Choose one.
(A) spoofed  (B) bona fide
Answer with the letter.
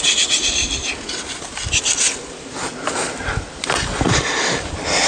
B